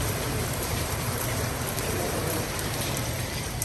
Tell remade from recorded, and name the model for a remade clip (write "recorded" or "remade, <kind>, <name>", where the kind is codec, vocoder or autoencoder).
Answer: remade, vocoder, BigVGAN v2